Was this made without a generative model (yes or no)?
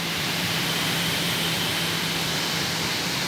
no